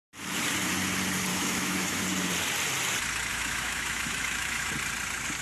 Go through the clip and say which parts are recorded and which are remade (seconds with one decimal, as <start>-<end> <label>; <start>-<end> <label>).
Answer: 0.0-1.3 recorded; 1.3-2.0 remade; 2.0-3.3 recorded; 3.3-4.7 remade; 4.7-5.4 recorded